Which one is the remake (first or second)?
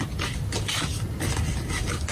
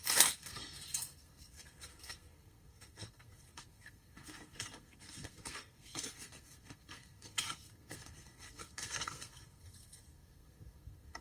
second